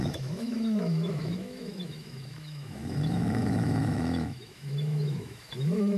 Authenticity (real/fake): fake